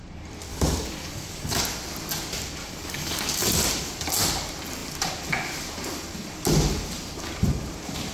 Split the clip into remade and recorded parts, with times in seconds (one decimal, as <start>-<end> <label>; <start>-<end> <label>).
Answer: 0.0-0.5 recorded; 0.5-1.6 remade; 1.6-2.6 recorded; 2.6-3.3 remade; 3.3-8.1 recorded